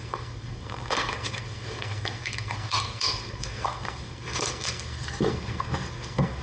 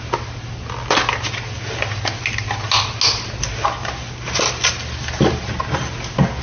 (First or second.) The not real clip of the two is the first